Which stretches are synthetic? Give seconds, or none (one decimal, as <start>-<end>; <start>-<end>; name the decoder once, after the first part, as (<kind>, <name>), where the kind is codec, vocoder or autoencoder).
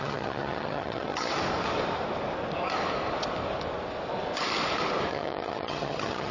0.0-1.3 (vocoder, HiFi-GAN); 5.1-6.3